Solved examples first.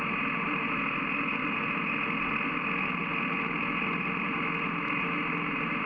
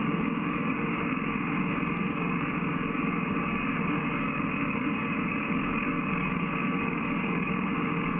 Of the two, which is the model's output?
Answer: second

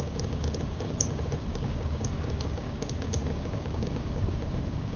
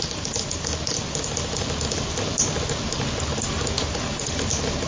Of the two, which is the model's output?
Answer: first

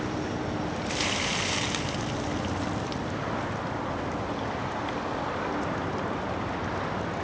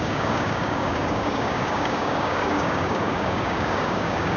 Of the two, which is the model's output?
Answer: second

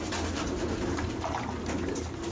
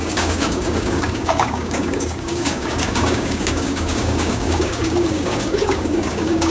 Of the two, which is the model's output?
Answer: second